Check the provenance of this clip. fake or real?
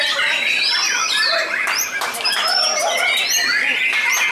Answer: real